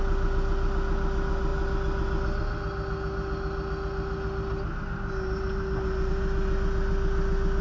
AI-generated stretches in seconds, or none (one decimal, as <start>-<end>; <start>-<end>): none